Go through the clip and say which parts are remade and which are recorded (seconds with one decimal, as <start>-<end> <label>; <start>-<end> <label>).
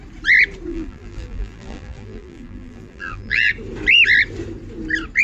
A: 0.0-0.7 recorded; 0.7-3.5 remade; 3.5-5.2 recorded